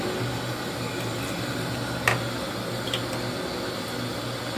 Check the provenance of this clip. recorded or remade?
recorded